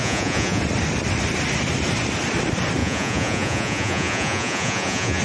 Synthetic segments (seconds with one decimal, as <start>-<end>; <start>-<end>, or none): 0.0-0.6; 2.8-5.2